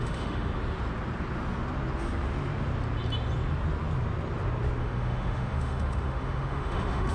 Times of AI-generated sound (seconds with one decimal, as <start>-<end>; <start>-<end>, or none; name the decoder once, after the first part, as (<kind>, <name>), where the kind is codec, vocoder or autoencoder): 0.0-0.5 (autoencoder, DAC-VAE); 4.8-7.1